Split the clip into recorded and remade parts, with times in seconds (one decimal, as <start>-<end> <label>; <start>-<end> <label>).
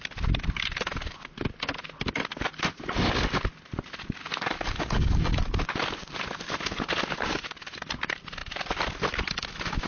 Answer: 0.0-4.2 recorded; 4.2-5.4 remade; 5.4-9.9 recorded